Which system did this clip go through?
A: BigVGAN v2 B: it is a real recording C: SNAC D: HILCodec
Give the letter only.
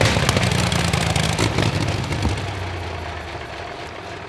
B